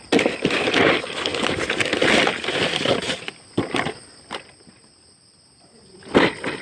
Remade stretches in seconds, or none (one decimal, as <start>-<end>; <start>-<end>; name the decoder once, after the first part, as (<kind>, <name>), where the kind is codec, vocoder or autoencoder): none